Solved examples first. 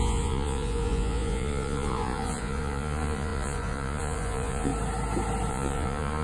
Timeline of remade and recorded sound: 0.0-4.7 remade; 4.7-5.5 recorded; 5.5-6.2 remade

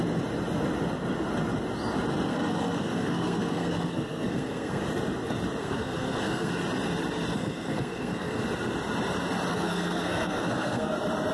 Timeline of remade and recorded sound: 0.0-2.3 recorded; 2.3-4.8 remade; 4.8-5.6 recorded; 5.6-6.5 remade; 6.5-7.3 recorded; 7.3-8.4 remade; 8.4-9.5 recorded; 9.5-10.9 remade; 10.9-11.3 recorded

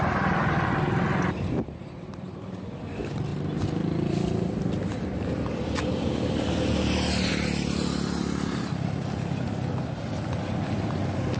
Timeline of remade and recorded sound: 0.0-11.4 recorded

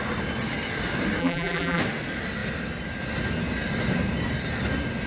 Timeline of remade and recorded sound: 0.0-1.2 recorded; 1.2-1.8 remade; 1.8-5.1 recorded

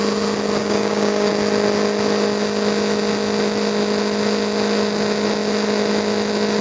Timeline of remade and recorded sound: 0.0-0.6 recorded; 0.6-1.3 remade; 1.3-6.6 recorded

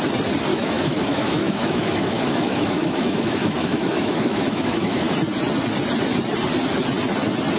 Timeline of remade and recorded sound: 0.0-0.5 recorded; 0.5-5.1 remade; 5.1-7.6 recorded

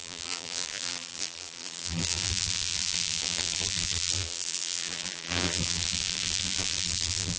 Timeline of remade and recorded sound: 0.0-7.4 remade